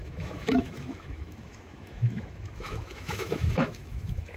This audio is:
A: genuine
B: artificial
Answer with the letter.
B